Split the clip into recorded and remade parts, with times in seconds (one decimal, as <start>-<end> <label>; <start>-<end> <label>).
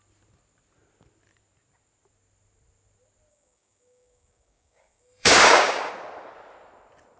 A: 0.0-3.3 recorded; 3.3-5.9 remade; 5.9-7.2 recorded